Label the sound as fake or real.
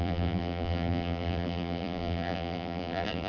fake